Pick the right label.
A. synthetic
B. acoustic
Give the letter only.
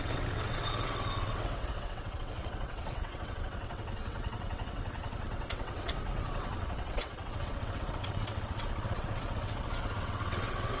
A